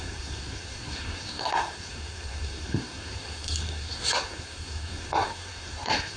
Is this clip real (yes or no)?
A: no